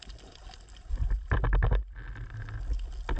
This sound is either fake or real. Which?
real